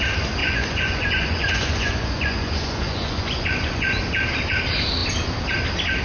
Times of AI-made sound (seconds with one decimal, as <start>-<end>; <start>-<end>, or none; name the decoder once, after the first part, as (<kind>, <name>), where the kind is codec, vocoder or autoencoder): 0.4-4.0 (vocoder, Vocos)

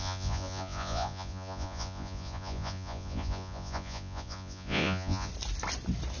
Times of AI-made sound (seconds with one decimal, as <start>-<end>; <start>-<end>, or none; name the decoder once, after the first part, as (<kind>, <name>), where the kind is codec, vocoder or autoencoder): 0.0-5.3 (vocoder, Vocos)

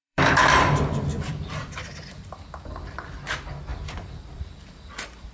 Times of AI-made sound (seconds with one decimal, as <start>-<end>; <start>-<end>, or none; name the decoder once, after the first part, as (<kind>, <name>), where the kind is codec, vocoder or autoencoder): 0.0-3.2 (vocoder, BigVGAN v2); 3.7-5.3

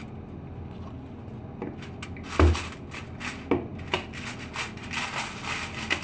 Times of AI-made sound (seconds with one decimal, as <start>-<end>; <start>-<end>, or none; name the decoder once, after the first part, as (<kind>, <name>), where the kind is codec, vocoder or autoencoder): none

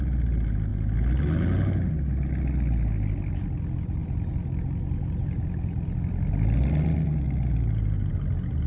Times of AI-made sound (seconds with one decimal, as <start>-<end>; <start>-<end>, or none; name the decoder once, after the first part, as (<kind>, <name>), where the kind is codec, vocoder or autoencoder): none